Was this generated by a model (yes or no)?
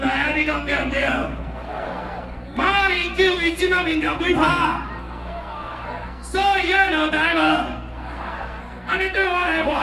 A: yes